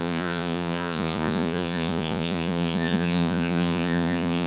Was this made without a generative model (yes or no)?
no